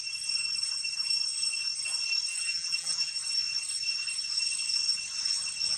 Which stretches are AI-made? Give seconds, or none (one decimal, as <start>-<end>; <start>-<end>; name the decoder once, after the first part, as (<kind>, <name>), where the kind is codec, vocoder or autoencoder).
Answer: 2.3-3.1 (vocoder, BigVGAN v2)